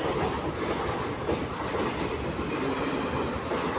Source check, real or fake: real